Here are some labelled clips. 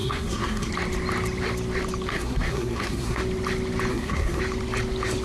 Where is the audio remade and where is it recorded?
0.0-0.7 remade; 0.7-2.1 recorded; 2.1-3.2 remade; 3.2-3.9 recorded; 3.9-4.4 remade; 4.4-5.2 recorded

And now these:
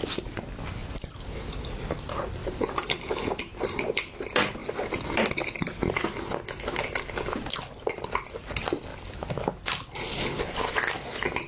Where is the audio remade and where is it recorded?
0.0-0.8 recorded; 0.8-1.7 remade; 1.7-4.6 recorded; 4.6-5.3 remade; 5.3-11.5 recorded

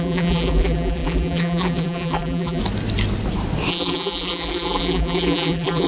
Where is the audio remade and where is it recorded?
0.0-2.6 remade; 2.6-3.7 recorded; 3.7-5.9 remade

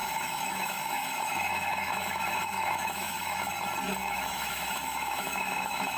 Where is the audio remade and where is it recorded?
0.0-3.5 remade; 3.5-4.0 recorded; 4.0-6.0 remade

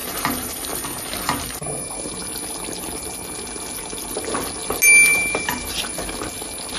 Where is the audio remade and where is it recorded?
0.0-0.6 remade; 0.6-5.1 recorded; 5.1-5.7 remade; 5.7-6.8 recorded